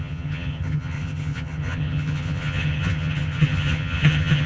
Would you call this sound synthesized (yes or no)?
yes